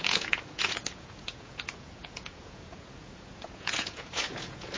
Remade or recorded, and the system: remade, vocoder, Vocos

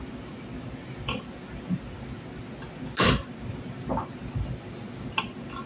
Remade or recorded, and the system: recorded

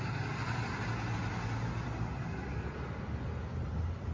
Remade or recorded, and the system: recorded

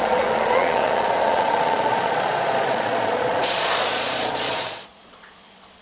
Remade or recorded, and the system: remade, vocoder, Vocos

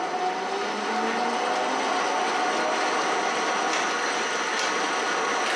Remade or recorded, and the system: recorded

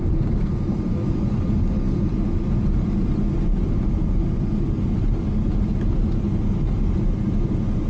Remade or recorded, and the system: recorded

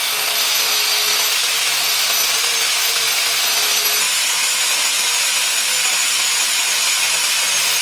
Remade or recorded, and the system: recorded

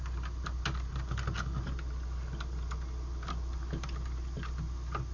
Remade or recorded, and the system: recorded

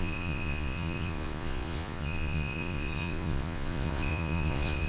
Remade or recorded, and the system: remade, vocoder, Vocos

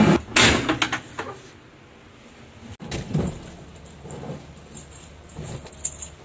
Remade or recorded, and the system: recorded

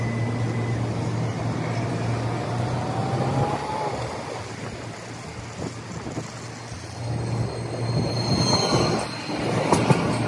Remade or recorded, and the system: recorded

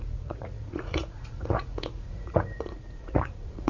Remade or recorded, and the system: remade, vocoder, Vocos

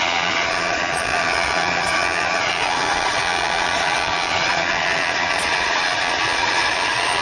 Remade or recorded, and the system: remade, vocoder, Vocos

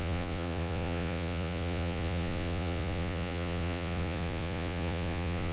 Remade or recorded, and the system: remade, vocoder, Vocos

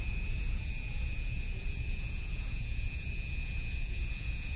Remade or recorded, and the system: remade, vocoder, Vocos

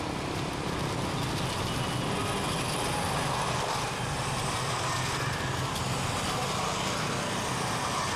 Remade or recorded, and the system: recorded